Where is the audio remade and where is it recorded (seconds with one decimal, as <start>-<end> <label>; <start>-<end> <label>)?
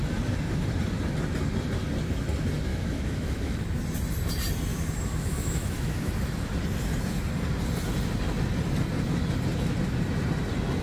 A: 0.0-2.7 recorded; 2.7-3.6 remade; 3.6-4.7 recorded; 4.7-6.1 remade; 6.1-10.8 recorded